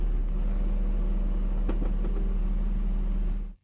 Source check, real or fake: real